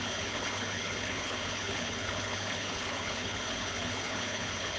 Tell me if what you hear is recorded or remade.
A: remade